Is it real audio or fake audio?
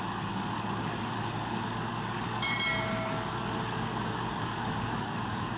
fake